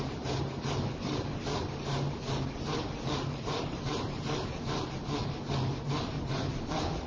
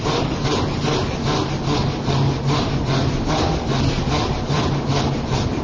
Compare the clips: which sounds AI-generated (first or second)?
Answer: first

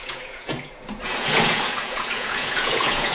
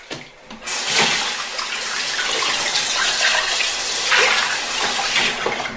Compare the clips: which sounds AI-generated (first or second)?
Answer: first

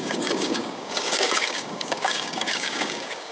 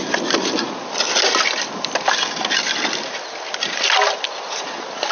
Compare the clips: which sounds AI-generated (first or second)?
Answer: first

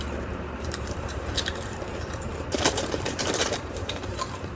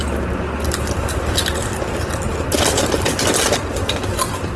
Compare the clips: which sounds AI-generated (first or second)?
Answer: first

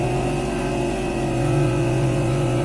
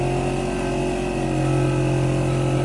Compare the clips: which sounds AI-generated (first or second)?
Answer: first